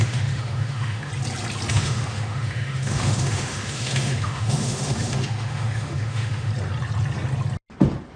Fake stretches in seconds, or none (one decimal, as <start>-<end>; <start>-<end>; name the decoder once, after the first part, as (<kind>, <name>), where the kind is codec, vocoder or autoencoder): 0.0-1.1 (autoencoder, DAC-VAE); 1.7-6.5